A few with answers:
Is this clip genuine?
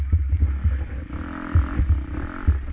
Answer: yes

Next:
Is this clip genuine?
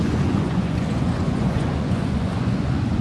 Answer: no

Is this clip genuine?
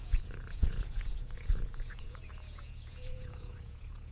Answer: no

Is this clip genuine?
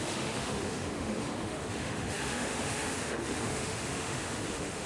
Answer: no